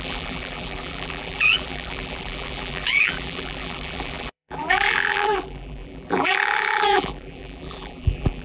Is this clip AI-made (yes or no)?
yes